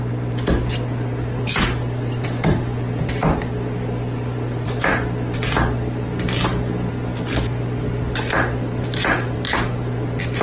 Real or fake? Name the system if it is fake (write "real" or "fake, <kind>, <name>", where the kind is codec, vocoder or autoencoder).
real